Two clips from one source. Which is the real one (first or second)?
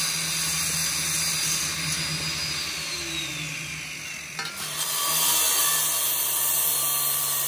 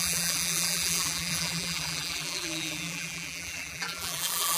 first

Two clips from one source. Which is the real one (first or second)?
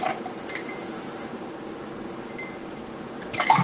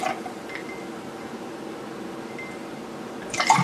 second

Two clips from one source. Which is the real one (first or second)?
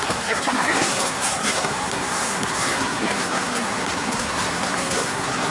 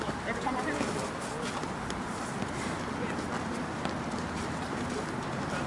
second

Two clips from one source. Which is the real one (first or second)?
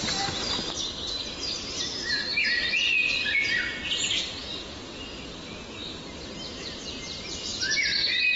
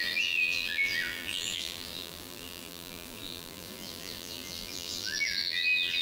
first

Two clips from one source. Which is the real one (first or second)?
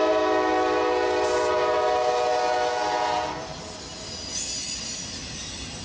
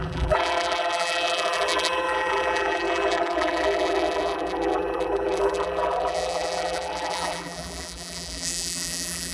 first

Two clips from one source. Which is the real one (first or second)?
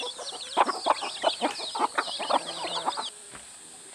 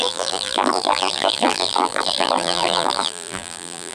first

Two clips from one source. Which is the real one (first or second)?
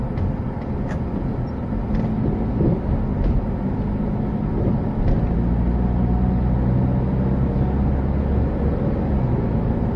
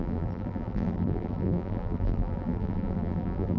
first